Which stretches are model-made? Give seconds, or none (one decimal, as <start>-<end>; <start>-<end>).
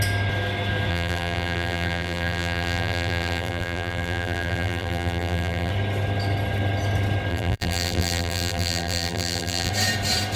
0.9-5.7; 7.3-9.7